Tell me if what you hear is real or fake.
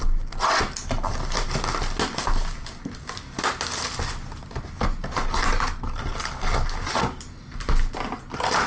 real